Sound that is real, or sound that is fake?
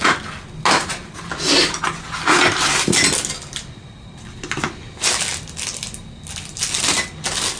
real